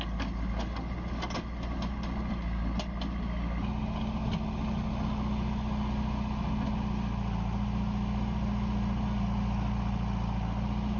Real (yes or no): yes